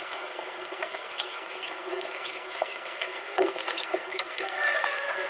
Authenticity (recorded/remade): remade